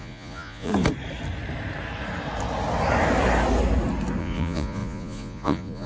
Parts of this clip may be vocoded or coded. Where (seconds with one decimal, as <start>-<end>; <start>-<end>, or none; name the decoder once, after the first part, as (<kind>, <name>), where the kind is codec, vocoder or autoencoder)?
0.0-0.7 (vocoder, Vocos); 4.2-5.9